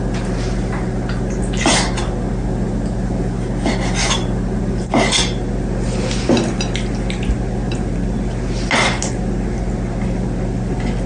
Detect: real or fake real